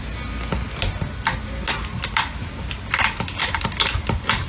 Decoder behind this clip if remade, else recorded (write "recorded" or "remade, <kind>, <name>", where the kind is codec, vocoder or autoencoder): recorded